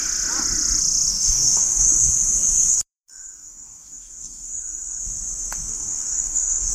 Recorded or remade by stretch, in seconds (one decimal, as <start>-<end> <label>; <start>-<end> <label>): 0.0-1.1 recorded; 1.1-2.1 remade; 2.1-2.7 recorded; 2.7-5.0 remade; 5.0-5.7 recorded; 5.7-6.7 remade